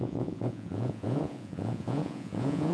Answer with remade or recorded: remade